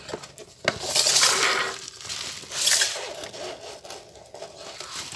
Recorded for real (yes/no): yes